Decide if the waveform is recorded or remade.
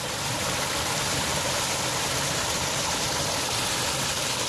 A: remade